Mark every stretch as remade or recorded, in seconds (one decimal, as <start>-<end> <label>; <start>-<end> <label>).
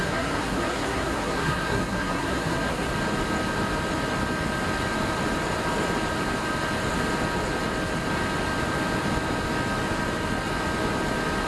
0.0-2.9 remade; 2.9-11.5 recorded